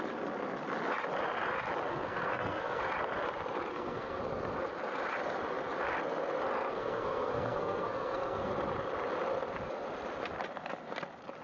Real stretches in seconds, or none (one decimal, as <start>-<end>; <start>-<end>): 0.0-1.9; 2.8-3.7; 4.2-6.7; 8.5-11.4